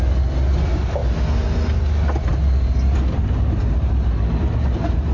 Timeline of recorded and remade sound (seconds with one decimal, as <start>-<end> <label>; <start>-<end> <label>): 0.0-5.1 recorded